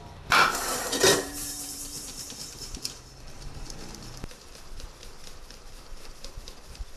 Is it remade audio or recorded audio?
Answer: remade